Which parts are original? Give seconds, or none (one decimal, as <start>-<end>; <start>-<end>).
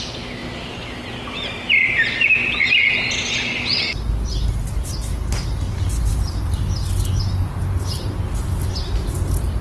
0.0-9.6